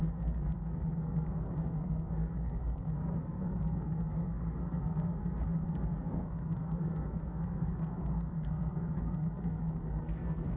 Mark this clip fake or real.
fake